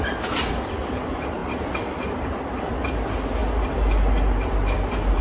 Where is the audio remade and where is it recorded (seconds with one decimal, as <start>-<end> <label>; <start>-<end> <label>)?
0.0-5.2 recorded